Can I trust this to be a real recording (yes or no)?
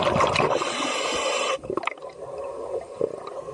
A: yes